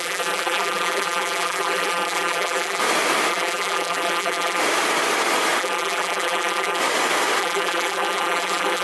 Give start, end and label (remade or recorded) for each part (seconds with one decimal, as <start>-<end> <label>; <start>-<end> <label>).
0.0-2.8 remade; 2.8-3.3 recorded; 3.3-4.6 remade; 4.6-5.6 recorded; 5.6-6.8 remade; 6.8-7.4 recorded; 7.4-8.8 remade